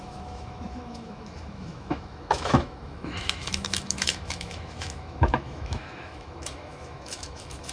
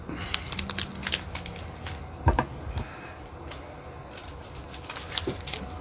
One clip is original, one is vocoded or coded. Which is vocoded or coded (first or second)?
first